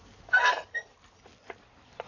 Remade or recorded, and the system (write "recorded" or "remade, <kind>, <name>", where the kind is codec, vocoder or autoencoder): recorded